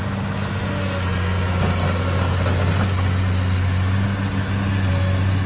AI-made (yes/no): no